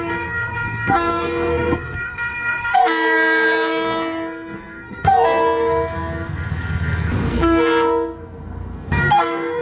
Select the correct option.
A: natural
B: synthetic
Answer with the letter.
B